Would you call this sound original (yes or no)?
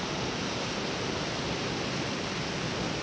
yes